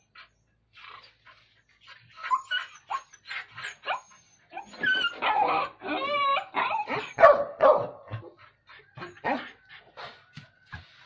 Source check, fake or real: real